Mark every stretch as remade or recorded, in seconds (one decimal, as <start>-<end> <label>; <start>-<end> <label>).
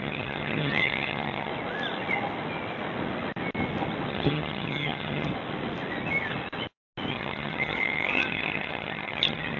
0.0-1.5 remade; 1.5-4.1 recorded; 4.1-5.3 remade; 5.3-7.1 recorded; 7.1-9.6 remade